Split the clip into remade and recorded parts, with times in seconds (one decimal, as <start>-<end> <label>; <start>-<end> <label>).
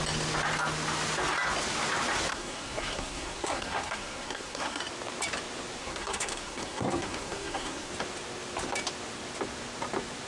0.0-2.3 recorded; 2.3-4.8 remade; 4.8-5.8 recorded; 5.8-7.9 remade; 7.9-10.3 recorded